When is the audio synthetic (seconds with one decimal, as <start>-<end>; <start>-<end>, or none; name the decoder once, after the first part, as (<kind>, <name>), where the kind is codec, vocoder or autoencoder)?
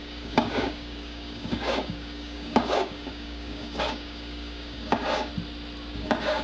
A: 0.0-5.3 (codec, DAC); 5.9-6.4